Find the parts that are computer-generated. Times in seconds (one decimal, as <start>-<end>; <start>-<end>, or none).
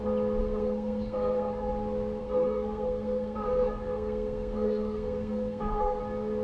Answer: 0.4-1.7; 2.2-6.0